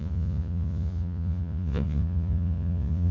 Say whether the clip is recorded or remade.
remade